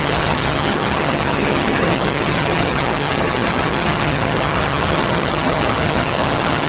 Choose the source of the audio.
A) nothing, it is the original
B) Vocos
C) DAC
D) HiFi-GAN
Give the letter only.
D